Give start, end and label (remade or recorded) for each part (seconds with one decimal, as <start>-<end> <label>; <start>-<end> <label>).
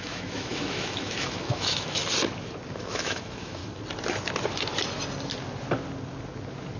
0.0-2.0 remade; 2.0-2.7 recorded; 2.7-3.6 remade; 3.6-6.8 recorded